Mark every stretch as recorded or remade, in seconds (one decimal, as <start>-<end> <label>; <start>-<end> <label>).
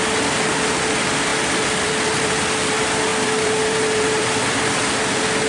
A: 0.0-1.3 recorded; 1.3-2.7 remade; 2.7-3.1 recorded; 3.1-4.8 remade; 4.8-5.5 recorded